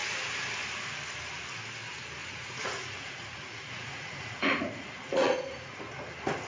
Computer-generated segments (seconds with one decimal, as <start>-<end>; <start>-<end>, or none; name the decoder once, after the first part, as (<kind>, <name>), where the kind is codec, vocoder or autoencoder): 2.2-5.8 (vocoder, Vocos)